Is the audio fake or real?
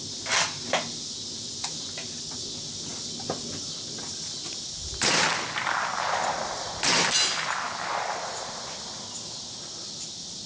real